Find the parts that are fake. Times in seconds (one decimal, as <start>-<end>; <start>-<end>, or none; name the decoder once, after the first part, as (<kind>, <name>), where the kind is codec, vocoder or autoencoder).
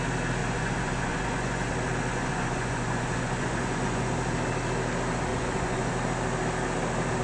0.4-1.7 (vocoder, Vocos); 2.1-4.1; 5.3-5.9